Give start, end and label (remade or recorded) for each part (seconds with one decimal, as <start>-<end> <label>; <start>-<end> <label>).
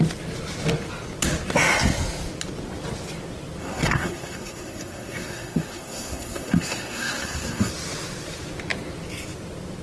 0.0-3.6 recorded; 3.6-7.7 remade; 7.7-9.8 recorded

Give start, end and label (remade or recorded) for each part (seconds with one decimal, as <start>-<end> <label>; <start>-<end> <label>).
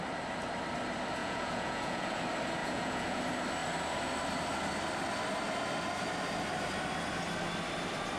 0.0-1.2 recorded; 1.2-2.2 remade; 2.2-2.6 recorded; 2.6-3.2 remade; 3.2-8.2 recorded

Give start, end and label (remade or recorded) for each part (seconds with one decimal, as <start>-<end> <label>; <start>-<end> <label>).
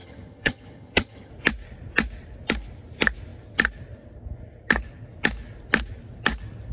0.0-1.3 remade; 1.3-6.7 recorded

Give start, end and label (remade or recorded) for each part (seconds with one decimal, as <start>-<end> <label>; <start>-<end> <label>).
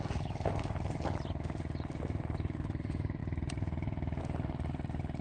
0.0-5.2 recorded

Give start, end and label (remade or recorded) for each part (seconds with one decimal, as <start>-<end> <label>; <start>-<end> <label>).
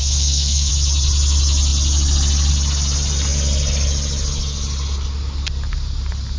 0.0-0.7 remade; 0.7-6.4 recorded